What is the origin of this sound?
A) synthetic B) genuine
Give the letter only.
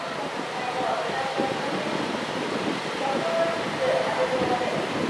B